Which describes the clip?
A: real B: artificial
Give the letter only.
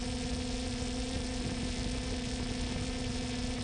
A